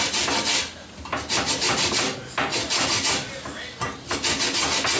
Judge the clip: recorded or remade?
recorded